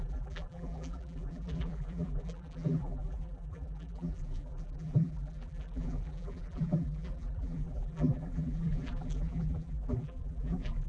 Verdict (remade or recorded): remade